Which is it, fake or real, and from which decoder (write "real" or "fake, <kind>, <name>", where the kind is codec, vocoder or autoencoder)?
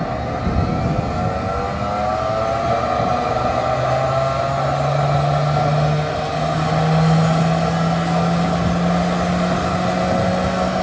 real